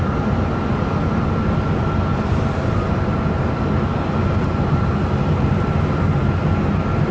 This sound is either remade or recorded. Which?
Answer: recorded